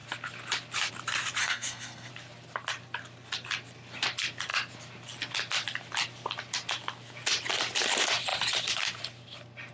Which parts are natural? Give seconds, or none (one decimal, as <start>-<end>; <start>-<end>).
0.0-1.4; 2.1-9.7